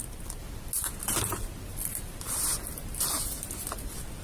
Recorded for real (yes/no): yes